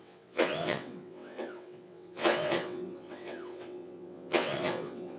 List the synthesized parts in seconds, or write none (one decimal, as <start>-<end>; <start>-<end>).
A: 0.0-5.2